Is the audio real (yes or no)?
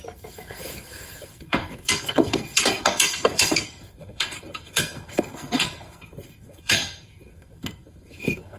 no